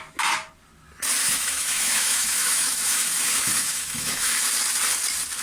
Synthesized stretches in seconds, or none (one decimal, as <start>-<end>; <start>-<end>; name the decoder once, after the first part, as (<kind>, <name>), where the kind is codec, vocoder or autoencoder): 1.2-4.4 (autoencoder, DAC-VAE)